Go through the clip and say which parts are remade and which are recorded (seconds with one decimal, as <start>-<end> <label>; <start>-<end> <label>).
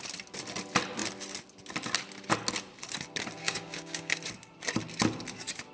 0.0-3.4 recorded; 3.4-4.2 remade; 4.2-5.7 recorded